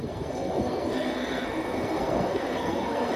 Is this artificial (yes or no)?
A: yes